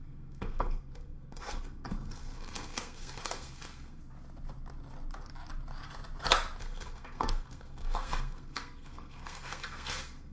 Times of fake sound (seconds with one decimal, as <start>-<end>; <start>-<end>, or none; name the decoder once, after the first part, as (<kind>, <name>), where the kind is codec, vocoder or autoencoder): 0.0-4.0 (codec, SNAC); 6.6-10.3